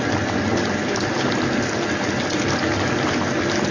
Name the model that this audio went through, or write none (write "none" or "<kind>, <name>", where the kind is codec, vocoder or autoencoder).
none